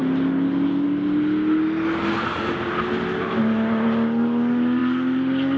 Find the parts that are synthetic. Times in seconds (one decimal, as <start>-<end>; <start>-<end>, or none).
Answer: none